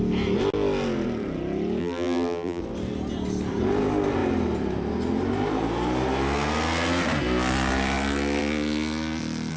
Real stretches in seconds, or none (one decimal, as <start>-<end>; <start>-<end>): 0.0-1.8; 2.6-9.6